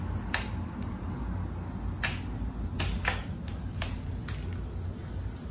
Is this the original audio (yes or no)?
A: yes